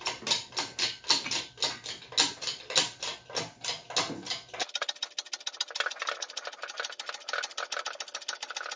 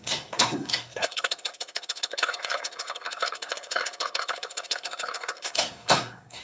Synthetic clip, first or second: second